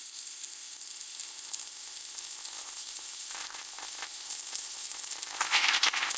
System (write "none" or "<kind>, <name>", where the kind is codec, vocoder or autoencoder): codec, ZipCodec